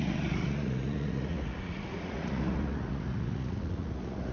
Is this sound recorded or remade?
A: remade